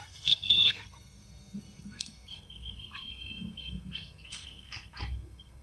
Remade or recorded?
remade